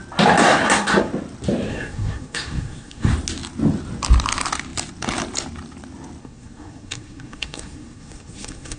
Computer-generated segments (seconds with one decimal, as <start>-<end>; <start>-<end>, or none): 0.4-1.1; 1.7-3.1; 6.2-8.8